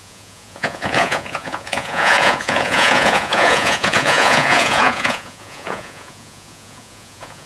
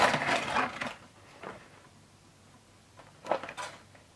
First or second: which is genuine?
second